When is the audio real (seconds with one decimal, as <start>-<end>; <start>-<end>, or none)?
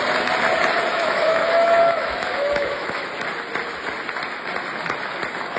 0.0-0.9; 3.1-5.6